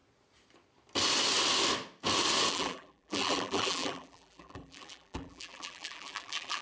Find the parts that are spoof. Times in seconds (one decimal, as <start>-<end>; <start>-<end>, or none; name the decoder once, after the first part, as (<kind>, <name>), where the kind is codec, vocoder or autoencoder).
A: 2.5-6.6 (vocoder, BigVGAN v2)